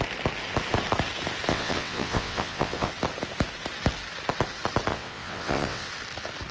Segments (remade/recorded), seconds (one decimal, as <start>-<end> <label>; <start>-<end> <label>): 0.0-1.5 recorded; 1.5-2.9 remade; 2.9-4.9 recorded; 4.9-5.9 remade; 5.9-6.5 recorded